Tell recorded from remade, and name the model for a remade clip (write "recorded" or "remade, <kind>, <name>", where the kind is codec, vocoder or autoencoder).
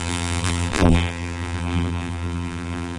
remade, vocoder, BigVGAN v2